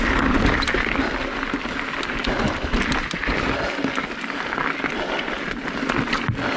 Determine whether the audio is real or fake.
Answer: real